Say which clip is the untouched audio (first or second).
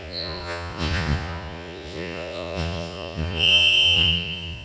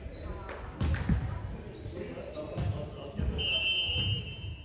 second